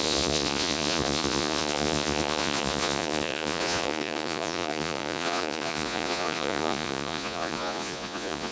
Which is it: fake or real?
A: fake